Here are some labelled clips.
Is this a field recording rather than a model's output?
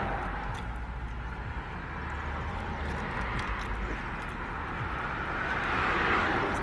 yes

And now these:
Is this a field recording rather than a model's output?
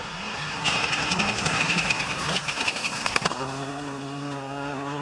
no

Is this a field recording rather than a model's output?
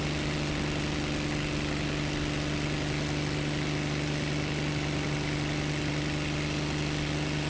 yes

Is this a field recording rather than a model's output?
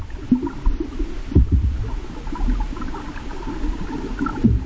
yes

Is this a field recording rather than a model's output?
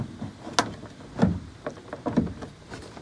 yes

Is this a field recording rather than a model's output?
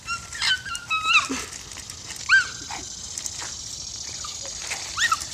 yes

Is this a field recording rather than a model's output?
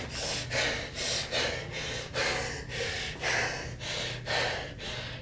yes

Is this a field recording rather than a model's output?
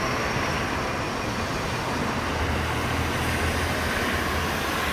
yes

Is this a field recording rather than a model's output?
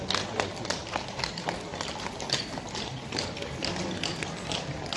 yes